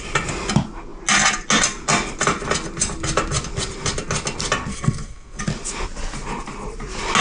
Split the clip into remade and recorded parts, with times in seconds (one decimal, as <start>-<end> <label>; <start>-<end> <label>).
0.0-4.7 recorded; 4.7-5.4 remade; 5.4-7.2 recorded